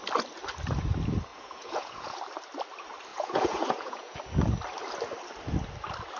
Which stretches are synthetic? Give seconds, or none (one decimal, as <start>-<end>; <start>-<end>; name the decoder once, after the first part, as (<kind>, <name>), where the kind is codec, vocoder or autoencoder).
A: 1.3-2.2 (vocoder, Vocos); 3.1-4.2